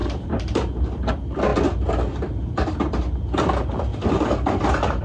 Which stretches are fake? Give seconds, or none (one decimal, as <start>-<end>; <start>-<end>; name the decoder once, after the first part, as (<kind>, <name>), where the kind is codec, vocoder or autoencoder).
0.0-1.1 (vocoder, BigVGAN v2); 3.9-5.0

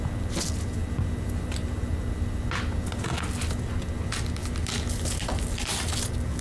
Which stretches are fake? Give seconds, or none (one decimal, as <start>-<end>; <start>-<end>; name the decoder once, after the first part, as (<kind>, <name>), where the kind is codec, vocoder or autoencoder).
none

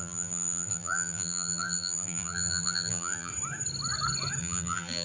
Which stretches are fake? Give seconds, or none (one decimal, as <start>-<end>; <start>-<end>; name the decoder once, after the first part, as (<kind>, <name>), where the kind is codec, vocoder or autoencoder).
0.0-3.3 (vocoder, BigVGAN v2); 4.4-5.0

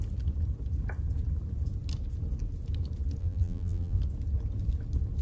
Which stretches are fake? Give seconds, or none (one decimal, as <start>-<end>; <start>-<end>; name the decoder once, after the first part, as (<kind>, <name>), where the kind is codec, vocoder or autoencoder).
3.2-4.0 (vocoder, BigVGAN v2)